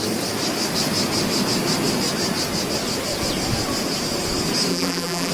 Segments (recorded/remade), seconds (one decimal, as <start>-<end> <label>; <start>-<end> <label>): 0.0-4.7 recorded; 4.7-5.3 remade